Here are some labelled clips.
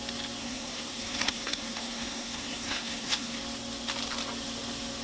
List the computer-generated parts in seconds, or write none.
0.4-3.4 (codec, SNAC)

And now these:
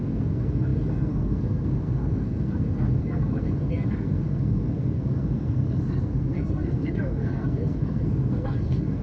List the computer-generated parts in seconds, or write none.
0.0-9.0 (codec, SNAC)

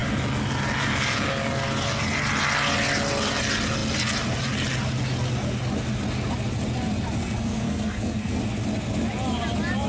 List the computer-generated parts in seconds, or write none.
7.2-8.4 (codec, SNAC)

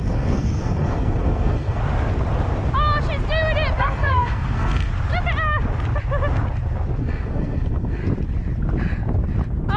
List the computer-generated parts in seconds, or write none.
0.0-1.8 (codec, SNAC); 3.8-4.9; 7.0-8.0

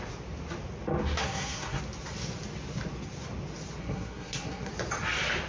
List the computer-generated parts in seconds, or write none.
1.2-1.8 (codec, SNAC); 3.8-4.7